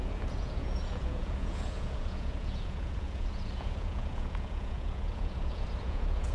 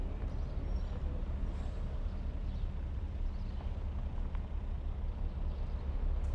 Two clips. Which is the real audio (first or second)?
second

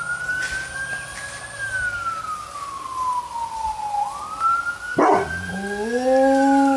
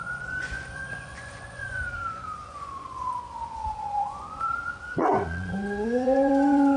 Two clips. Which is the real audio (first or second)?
first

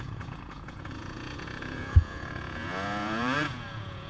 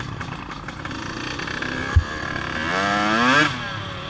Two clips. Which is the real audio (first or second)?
second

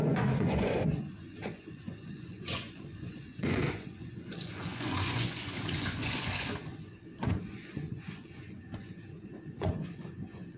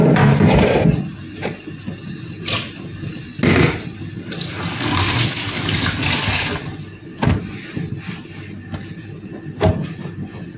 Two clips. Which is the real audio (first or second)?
second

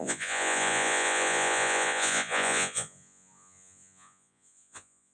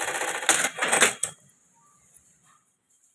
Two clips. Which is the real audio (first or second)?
second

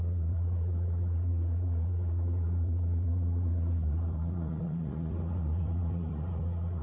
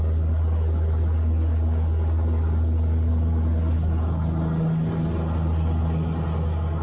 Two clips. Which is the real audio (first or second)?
second